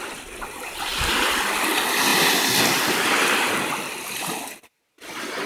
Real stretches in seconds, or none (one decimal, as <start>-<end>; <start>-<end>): 0.0-5.5